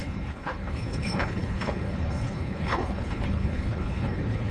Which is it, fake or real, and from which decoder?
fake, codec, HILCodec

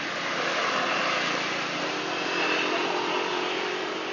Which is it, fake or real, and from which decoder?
real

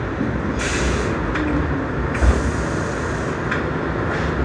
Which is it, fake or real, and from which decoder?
real